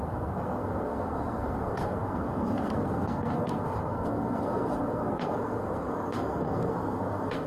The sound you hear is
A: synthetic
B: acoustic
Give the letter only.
A